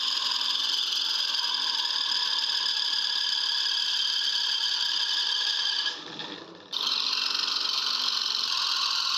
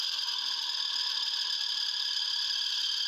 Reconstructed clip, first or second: first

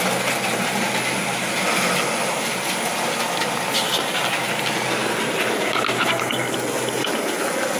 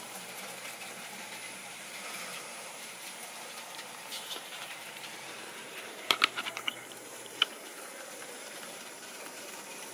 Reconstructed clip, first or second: second